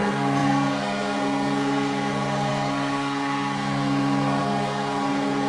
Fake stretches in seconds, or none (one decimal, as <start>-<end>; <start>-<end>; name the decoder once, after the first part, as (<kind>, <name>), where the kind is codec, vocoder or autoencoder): 0.0-5.5 (codec, SNAC)